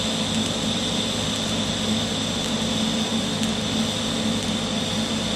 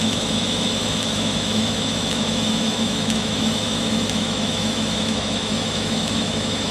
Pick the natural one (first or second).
first